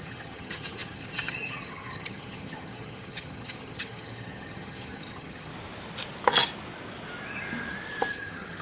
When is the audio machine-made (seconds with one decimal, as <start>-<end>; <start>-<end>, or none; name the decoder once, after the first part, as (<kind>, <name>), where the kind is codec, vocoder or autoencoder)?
0.0-5.5 (vocoder, HiFi-GAN); 8.1-8.6